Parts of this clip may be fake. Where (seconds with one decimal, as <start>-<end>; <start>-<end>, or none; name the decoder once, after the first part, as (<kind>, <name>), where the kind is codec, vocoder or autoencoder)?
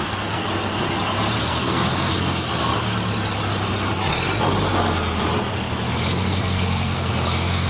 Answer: 0.0-0.4 (codec, SNAC); 1.4-2.7; 6.1-7.7